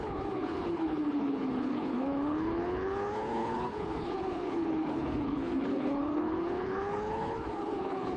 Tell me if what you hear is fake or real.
fake